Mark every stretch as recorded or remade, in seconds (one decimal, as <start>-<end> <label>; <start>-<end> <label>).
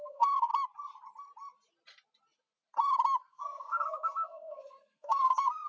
0.0-0.5 remade; 0.5-3.3 recorded; 3.3-5.7 remade